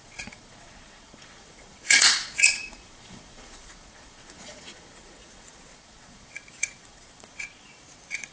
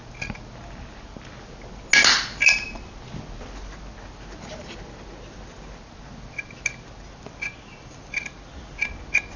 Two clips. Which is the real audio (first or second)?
second